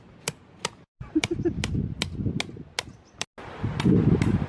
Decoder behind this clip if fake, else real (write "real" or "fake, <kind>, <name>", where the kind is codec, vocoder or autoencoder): real